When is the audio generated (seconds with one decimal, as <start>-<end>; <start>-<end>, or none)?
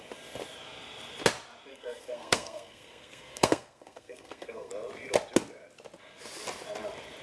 1.7-4.7